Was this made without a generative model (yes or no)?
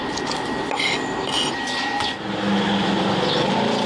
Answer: yes